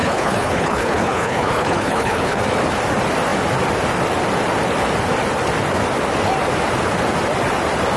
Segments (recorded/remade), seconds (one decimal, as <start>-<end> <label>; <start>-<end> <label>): 0.0-2.4 remade; 2.4-8.0 recorded